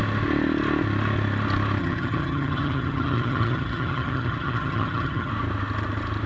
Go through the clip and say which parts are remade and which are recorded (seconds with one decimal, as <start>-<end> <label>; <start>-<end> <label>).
0.0-1.8 recorded; 1.8-5.3 remade; 5.3-6.3 recorded